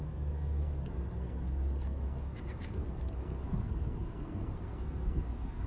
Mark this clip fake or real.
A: fake